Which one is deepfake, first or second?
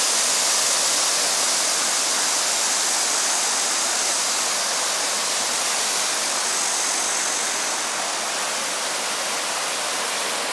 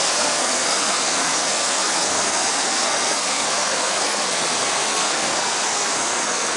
second